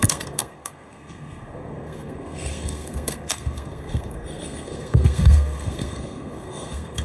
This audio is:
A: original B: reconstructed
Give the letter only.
B